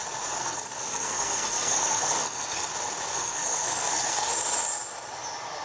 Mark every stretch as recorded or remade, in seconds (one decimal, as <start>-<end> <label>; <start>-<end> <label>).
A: 0.0-0.4 recorded; 0.4-2.7 remade; 2.7-3.1 recorded; 3.1-4.3 remade; 4.3-5.6 recorded